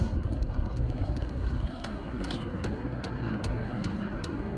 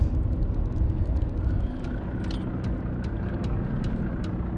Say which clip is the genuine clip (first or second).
second